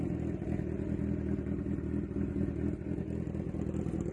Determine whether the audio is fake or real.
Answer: real